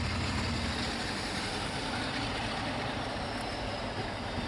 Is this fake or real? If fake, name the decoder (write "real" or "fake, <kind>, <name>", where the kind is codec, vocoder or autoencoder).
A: real